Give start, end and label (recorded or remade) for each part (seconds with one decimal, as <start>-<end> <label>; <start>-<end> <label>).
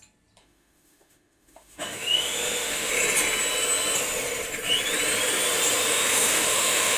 0.0-0.4 recorded; 0.4-2.9 remade; 2.9-5.9 recorded; 5.9-7.0 remade